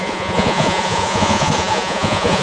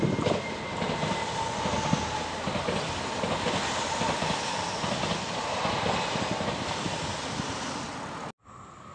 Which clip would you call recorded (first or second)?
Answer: second